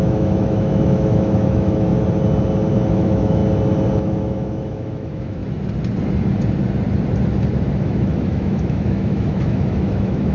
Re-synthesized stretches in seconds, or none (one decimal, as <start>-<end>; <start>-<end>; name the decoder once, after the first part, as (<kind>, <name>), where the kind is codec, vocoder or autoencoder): 0.0-1.9 (autoencoder, DAC-VAE); 2.9-3.4; 4.0-5.4; 7.8-10.3